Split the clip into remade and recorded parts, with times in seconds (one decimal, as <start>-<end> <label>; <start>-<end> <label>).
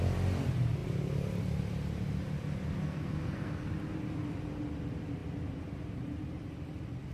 0.0-2.8 recorded; 2.8-3.7 remade; 3.7-7.1 recorded